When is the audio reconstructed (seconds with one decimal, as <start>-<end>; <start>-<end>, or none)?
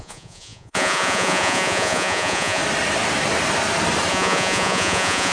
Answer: 0.0-2.6; 4.1-5.3